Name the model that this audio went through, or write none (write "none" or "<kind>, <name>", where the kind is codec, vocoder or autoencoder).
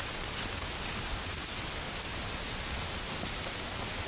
none